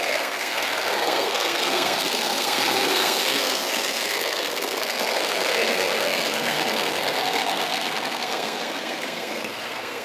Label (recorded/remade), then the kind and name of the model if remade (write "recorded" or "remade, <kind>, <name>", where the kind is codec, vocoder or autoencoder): remade, codec, SNAC